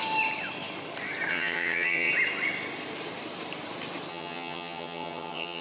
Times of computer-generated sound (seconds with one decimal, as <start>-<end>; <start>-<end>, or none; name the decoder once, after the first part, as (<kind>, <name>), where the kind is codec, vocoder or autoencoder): 1.3-2.1 (vocoder, HiFi-GAN); 4.1-5.6